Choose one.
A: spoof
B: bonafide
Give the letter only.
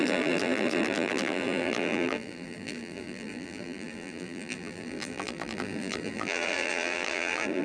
A